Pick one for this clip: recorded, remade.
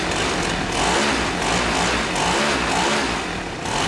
recorded